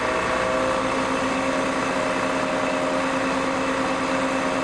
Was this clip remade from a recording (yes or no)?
no